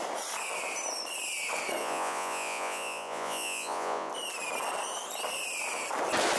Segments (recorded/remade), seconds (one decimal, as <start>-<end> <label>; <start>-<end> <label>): 0.0-1.8 recorded; 1.8-4.1 remade; 4.1-6.4 recorded